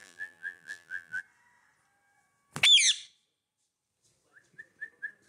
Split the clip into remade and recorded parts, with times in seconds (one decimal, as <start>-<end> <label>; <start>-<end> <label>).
0.0-1.2 remade; 1.2-5.3 recorded